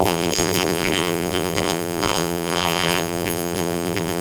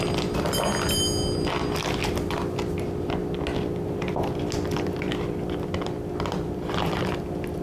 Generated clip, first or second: first